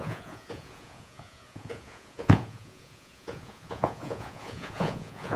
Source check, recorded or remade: remade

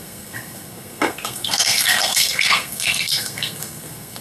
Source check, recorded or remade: remade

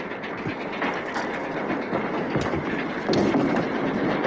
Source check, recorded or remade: remade